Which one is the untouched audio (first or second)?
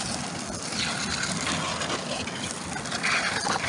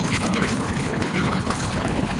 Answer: first